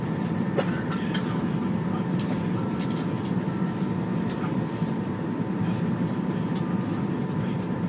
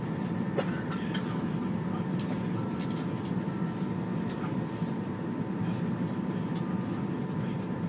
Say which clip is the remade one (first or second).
first